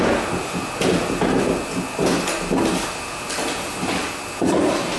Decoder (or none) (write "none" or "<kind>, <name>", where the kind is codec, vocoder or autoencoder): none